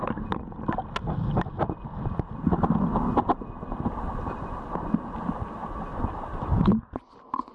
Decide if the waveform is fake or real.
real